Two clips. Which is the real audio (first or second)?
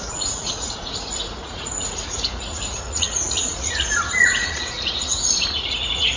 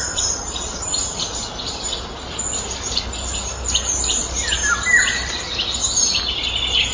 second